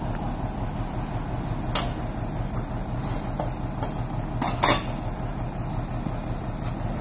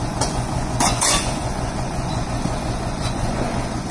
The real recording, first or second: first